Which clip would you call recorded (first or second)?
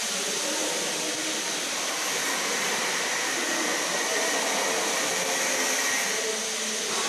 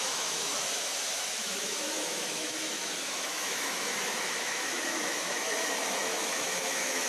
first